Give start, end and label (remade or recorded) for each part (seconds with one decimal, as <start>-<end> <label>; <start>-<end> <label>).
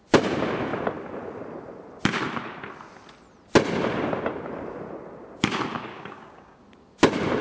0.0-5.9 recorded; 5.9-6.6 remade; 6.6-7.4 recorded